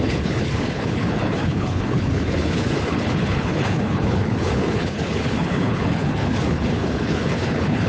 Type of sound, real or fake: fake